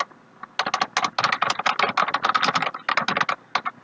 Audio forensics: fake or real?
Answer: real